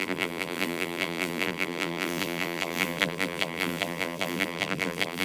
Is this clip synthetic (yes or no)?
yes